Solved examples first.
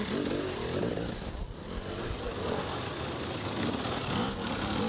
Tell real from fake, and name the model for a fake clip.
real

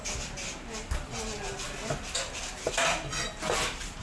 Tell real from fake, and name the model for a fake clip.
real